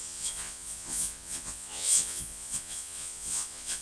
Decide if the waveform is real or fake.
fake